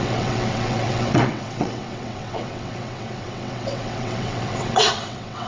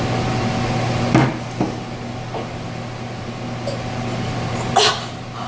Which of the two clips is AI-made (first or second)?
first